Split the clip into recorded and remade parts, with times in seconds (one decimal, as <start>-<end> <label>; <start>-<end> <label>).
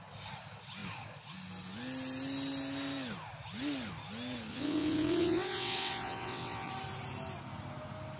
0.0-4.5 recorded; 4.5-6.7 remade; 6.7-8.2 recorded